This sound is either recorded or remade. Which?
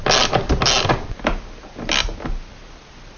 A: recorded